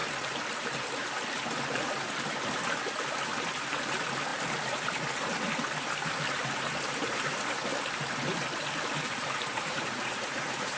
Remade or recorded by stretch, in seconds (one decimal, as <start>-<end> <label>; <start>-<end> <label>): 0.0-9.5 recorded; 9.5-10.8 remade